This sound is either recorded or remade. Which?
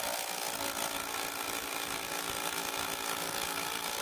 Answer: recorded